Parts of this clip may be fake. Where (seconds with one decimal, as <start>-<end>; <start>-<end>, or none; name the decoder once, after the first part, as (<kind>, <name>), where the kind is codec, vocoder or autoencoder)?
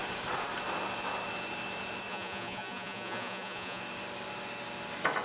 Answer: 2.1-3.8 (vocoder, Vocos)